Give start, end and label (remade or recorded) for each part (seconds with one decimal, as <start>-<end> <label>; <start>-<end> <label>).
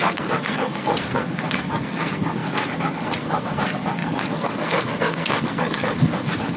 0.0-6.6 remade